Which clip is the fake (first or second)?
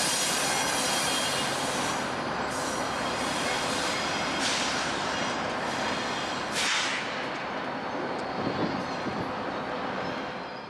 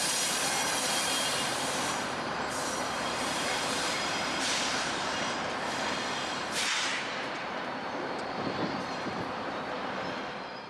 second